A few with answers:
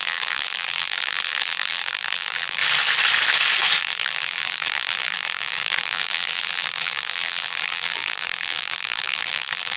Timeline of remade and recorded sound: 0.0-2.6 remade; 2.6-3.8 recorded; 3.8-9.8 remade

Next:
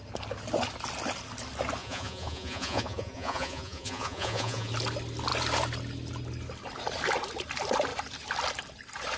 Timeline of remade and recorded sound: 0.0-1.8 recorded; 1.8-4.7 remade; 4.7-9.2 recorded

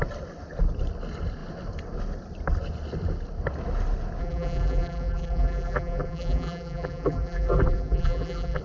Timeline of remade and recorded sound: 0.0-4.2 recorded; 4.2-8.6 remade

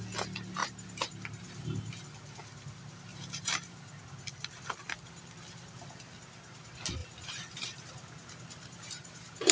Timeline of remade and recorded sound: 0.0-0.6 recorded; 0.6-2.0 remade; 2.0-3.1 recorded; 3.1-4.0 remade; 4.0-7.0 recorded; 7.0-9.5 remade

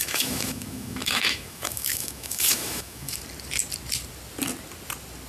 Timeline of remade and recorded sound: 0.0-3.2 remade; 3.2-5.3 recorded

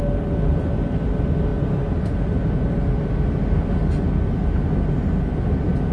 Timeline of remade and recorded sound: 0.0-5.9 recorded